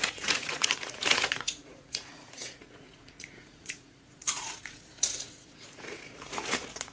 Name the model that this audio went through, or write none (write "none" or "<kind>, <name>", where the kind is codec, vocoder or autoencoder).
vocoder, Vocos